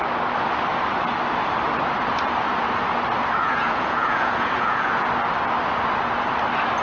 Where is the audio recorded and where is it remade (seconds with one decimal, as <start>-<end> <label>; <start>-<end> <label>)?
0.0-3.4 recorded; 3.4-5.1 remade; 5.1-6.8 recorded